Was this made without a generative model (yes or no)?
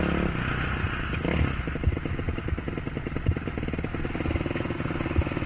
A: yes